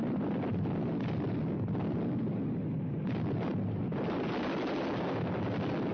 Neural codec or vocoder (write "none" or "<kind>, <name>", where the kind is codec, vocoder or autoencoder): none